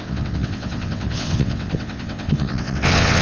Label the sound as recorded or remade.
remade